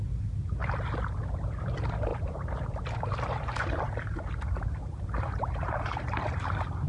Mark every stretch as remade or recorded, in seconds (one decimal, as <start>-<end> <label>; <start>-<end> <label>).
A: 0.0-2.1 recorded; 2.1-6.2 remade; 6.2-6.9 recorded